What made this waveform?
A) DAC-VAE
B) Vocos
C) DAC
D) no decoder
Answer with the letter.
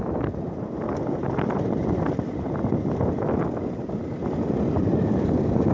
D